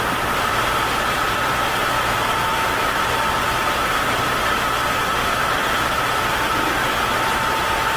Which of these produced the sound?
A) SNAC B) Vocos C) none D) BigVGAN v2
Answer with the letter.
C